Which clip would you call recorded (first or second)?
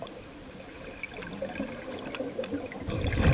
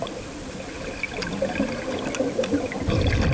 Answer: first